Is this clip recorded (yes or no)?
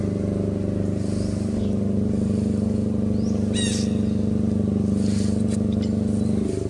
yes